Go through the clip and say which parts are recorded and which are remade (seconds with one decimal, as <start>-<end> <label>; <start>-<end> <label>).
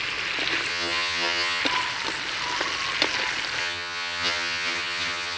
0.0-0.7 recorded; 0.7-1.6 remade; 1.6-3.6 recorded; 3.6-5.4 remade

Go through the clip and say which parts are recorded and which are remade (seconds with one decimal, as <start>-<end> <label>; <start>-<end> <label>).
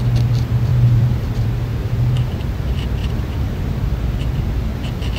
0.0-0.7 recorded; 0.7-1.2 remade; 1.2-1.7 recorded; 1.7-2.5 remade; 2.5-3.0 recorded; 3.0-3.7 remade; 3.7-5.2 recorded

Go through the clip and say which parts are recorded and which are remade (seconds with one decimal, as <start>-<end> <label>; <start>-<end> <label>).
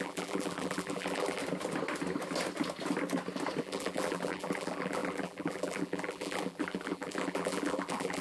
0.0-1.4 remade; 1.4-3.6 recorded; 3.6-8.2 remade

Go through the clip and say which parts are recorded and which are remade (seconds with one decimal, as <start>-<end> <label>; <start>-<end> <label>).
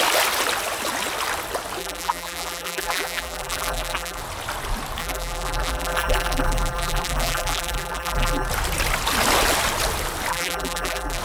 0.0-1.8 recorded; 1.8-4.2 remade; 4.2-5.0 recorded; 5.0-8.5 remade; 8.5-10.3 recorded; 10.3-11.2 remade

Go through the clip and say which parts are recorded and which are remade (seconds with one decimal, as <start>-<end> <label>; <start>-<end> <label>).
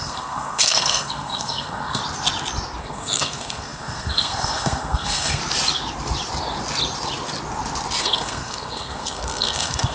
0.0-2.0 remade; 2.0-2.8 recorded; 2.8-5.4 remade; 5.4-8.0 recorded; 8.0-9.9 remade